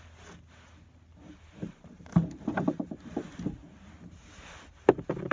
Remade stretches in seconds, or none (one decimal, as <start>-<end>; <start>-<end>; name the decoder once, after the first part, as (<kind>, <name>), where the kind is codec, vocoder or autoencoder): 1.1-2.9 (vocoder, BigVGAN v2)

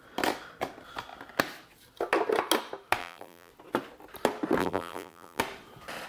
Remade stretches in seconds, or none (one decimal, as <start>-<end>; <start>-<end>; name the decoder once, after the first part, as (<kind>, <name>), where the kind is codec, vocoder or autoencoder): 3.0-3.5 (vocoder, BigVGAN v2); 4.6-5.4